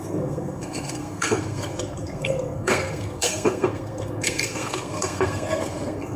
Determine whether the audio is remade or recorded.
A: remade